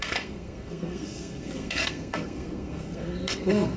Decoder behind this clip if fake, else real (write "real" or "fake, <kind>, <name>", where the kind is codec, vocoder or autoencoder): fake, codec, SNAC